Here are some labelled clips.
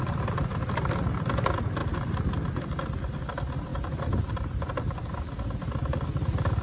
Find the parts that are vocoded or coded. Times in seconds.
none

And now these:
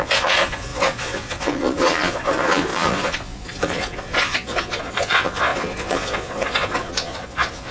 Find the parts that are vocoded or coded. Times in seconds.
0.0-7.7 (vocoder, Vocos)

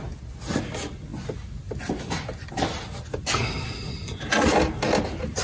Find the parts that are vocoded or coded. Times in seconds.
none